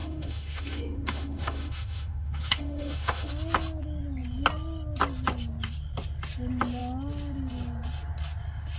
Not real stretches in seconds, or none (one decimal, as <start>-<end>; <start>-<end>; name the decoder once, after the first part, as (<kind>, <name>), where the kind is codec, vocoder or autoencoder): 0.0-3.3 (autoencoder, DAC-VAE)